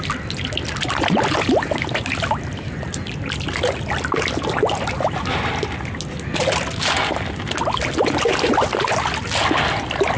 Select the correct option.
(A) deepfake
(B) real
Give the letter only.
B